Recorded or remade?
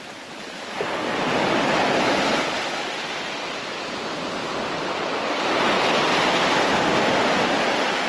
recorded